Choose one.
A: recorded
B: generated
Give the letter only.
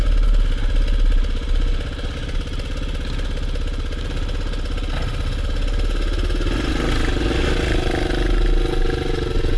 A